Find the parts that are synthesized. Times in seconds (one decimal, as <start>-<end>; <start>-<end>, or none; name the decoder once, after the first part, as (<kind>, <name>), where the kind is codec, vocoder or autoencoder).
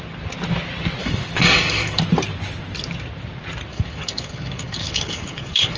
1.0-2.0 (codec, DAC); 3.7-5.8